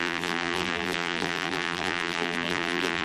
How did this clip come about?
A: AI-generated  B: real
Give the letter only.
A